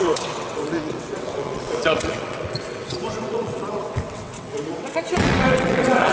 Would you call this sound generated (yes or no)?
yes